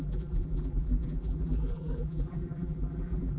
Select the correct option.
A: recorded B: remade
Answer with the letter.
B